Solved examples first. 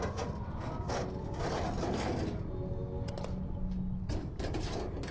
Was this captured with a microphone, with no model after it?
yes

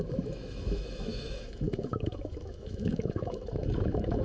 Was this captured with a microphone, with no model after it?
no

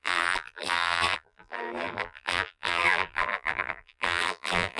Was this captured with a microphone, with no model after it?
no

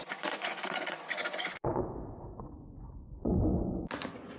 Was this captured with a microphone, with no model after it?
no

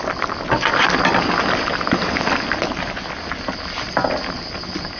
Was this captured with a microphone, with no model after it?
yes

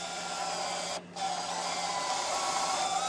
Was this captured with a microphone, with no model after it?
yes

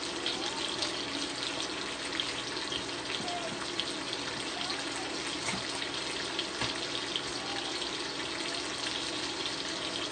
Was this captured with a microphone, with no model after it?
yes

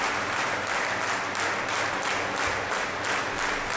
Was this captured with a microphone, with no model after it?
yes